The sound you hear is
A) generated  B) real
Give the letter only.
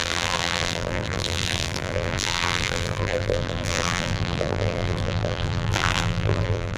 A